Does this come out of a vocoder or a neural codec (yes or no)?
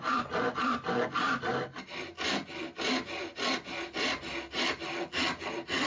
no